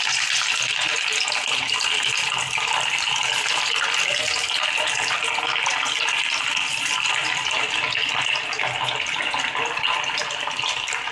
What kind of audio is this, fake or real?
real